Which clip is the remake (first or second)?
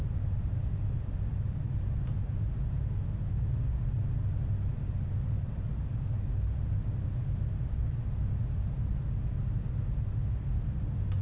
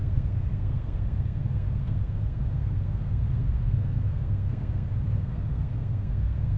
second